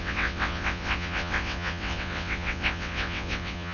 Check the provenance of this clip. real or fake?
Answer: fake